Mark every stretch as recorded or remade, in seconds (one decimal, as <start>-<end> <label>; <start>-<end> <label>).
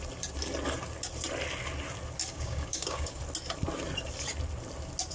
0.0-2.3 recorded; 2.3-3.2 remade; 3.2-5.1 recorded